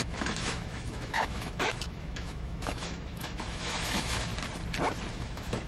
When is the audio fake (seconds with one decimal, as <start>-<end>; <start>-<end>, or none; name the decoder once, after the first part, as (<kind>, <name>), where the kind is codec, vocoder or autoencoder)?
0.0-4.3 (autoencoder, DAC-VAE); 5.1-5.7